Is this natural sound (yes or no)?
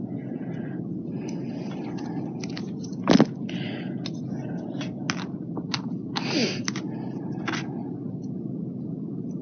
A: yes